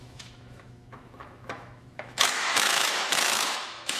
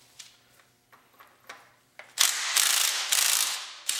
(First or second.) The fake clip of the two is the first